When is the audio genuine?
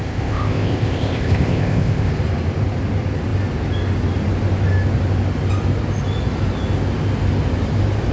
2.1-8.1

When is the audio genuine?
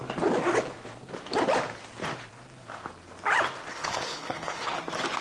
0.0-3.7; 4.8-5.2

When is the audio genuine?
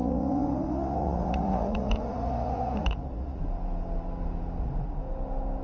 3.4-5.6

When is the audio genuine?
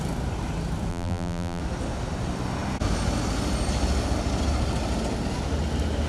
0.0-0.9; 1.6-6.1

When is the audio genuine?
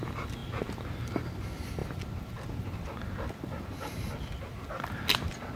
0.0-5.6